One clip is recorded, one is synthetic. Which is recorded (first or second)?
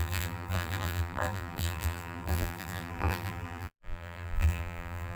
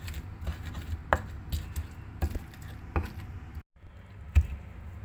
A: second